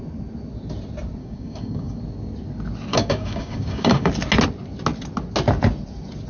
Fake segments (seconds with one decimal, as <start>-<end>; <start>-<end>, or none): 1.2-2.0; 2.9-4.1